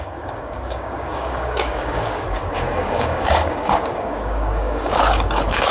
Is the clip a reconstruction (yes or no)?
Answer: yes